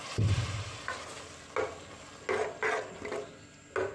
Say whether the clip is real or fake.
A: real